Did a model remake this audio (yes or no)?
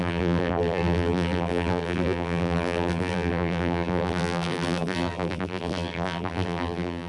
yes